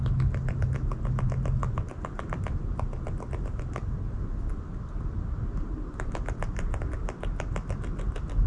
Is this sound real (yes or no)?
yes